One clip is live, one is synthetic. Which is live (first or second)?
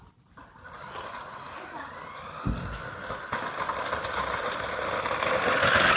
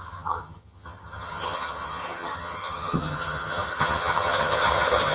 first